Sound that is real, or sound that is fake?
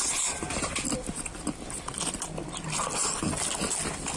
real